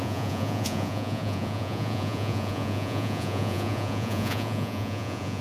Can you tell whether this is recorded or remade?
remade